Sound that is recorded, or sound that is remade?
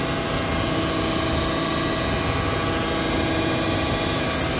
recorded